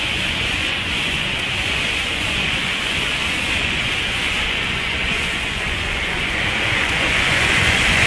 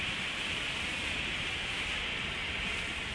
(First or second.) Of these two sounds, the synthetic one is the first